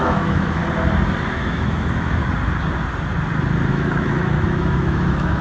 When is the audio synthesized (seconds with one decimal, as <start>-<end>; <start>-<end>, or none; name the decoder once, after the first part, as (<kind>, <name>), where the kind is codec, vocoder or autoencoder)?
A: 0.0-0.6 (autoencoder, DAC-VAE); 1.2-2.2; 3.7-5.4